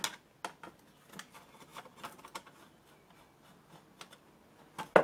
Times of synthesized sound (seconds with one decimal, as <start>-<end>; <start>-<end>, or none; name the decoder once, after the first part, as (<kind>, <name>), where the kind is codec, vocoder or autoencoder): none